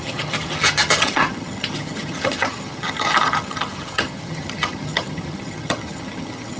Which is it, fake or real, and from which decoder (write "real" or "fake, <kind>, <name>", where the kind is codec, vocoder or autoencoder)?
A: fake, vocoder, HiFi-GAN